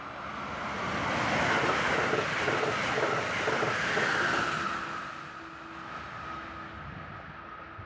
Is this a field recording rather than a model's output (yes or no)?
yes